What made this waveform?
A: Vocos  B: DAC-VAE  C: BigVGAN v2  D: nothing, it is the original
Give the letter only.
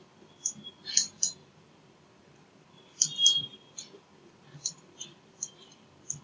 C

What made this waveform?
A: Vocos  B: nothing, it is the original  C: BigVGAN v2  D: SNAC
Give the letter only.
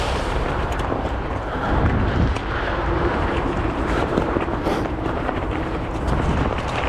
C